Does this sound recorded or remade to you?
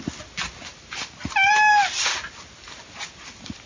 recorded